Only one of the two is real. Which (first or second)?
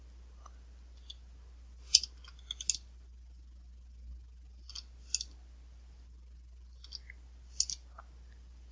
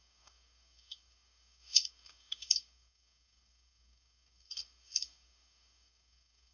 first